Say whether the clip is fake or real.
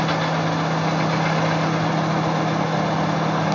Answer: real